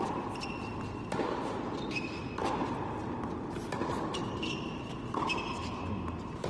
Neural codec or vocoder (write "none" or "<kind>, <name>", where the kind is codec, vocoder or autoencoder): none